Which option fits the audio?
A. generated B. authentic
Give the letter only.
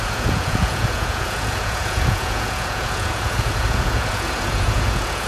A